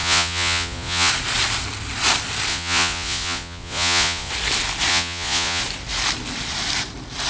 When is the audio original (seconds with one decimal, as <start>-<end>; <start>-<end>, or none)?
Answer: 1.1-2.5; 4.3-4.9; 5.6-7.3